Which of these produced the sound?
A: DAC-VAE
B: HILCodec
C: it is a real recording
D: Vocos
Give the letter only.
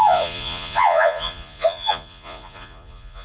D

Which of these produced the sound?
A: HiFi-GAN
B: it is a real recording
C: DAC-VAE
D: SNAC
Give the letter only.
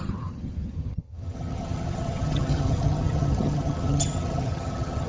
A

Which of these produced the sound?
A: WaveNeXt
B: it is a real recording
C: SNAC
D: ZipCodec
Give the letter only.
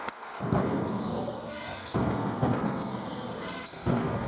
C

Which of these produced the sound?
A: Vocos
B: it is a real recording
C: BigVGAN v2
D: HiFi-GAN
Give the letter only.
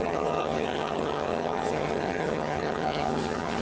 D